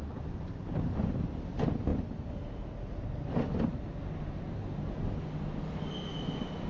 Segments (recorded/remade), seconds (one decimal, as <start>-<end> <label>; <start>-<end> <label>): 0.0-6.7 recorded